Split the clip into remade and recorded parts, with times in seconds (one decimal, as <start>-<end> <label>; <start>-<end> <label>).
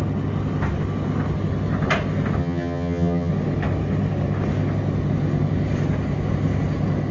0.0-2.4 recorded; 2.4-3.3 remade; 3.3-7.1 recorded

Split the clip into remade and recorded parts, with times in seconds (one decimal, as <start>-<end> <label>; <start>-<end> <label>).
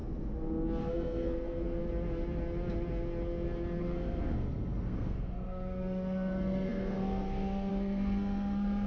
0.0-0.8 recorded; 0.8-1.8 remade; 1.8-3.8 recorded; 3.8-8.9 remade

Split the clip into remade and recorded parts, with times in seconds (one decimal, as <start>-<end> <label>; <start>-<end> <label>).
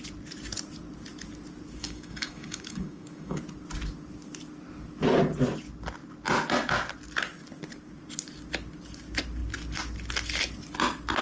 0.0-1.8 recorded; 1.8-3.4 remade; 3.4-11.2 recorded